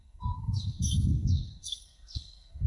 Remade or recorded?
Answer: remade